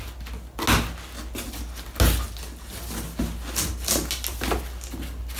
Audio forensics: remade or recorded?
recorded